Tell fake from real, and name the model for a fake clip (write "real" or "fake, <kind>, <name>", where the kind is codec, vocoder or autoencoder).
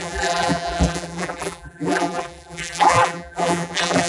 fake, vocoder, BigVGAN v2